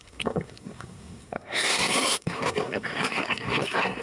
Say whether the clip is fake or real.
fake